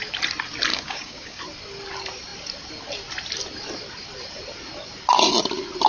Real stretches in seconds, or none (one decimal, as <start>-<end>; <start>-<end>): 0.0-0.7; 1.4-5.9